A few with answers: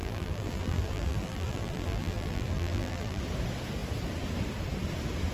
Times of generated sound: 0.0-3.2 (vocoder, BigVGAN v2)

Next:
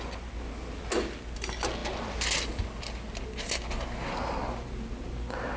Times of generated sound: none

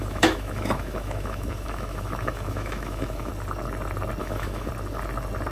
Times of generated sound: 0.0-3.3 (autoencoder, DAC-VAE); 4.2-4.7

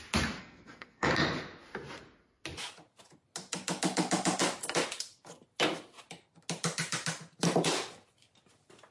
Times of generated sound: 0.4-1.1 (codec, SNAC)

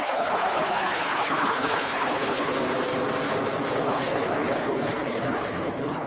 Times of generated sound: 0.0-2.5 (codec, HILCodec); 3.7-6.1